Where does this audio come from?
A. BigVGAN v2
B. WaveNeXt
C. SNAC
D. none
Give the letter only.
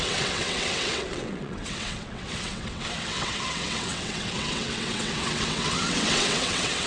B